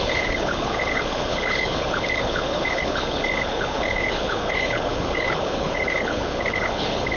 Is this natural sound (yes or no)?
no